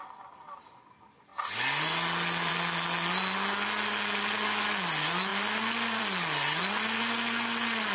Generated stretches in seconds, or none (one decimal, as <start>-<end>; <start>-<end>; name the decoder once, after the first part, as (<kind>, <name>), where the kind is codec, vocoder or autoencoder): none